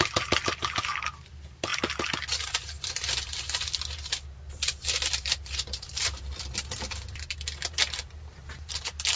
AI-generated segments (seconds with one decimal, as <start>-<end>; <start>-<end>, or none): none